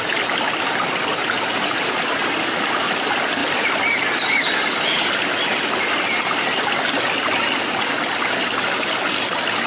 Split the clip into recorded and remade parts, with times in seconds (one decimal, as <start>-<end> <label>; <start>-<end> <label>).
0.0-9.7 recorded